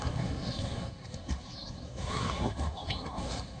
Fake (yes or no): yes